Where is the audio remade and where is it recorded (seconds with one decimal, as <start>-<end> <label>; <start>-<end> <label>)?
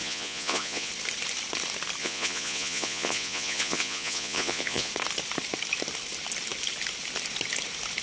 0.0-0.9 remade; 0.9-2.0 recorded; 2.0-4.9 remade; 4.9-8.0 recorded